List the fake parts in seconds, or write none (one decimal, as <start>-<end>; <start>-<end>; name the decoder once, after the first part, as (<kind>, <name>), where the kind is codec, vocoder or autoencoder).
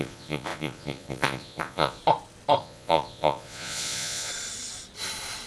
0.0-2.0 (vocoder, Vocos); 2.6-4.3